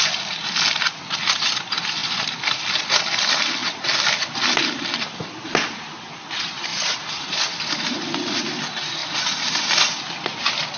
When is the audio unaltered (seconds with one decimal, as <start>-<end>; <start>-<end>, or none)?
0.0-10.8

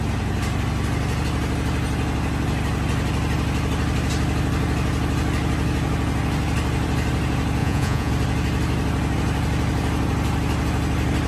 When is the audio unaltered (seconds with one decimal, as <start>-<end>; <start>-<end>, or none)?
0.0-7.6; 8.1-11.3

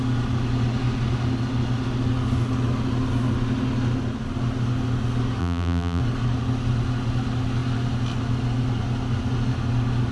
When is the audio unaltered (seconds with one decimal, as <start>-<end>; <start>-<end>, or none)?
0.0-5.4; 6.0-10.1

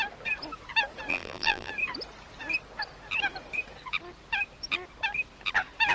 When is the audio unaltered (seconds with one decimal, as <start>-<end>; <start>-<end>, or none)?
0.0-1.1; 1.7-5.9

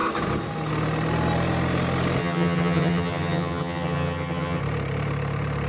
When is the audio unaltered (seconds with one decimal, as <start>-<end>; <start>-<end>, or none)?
0.0-2.2; 4.6-5.7

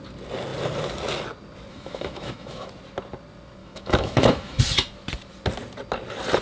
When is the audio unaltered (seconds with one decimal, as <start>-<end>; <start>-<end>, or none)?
0.0-1.7; 2.7-3.6; 4.6-6.4

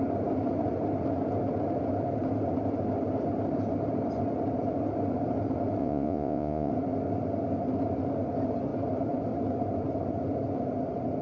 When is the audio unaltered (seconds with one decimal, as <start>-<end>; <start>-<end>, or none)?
0.0-5.8; 6.7-11.2

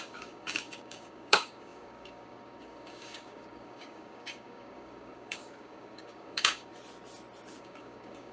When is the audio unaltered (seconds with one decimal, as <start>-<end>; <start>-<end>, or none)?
6.7-7.6